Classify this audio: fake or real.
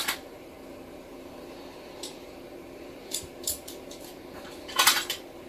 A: fake